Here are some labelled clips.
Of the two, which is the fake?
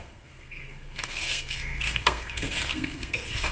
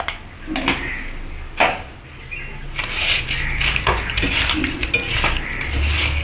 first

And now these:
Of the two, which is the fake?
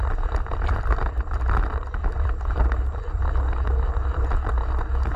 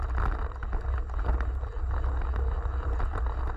first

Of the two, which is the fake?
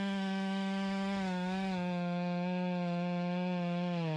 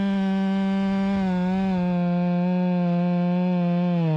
first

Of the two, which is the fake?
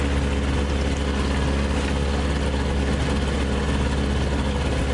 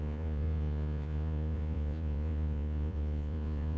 second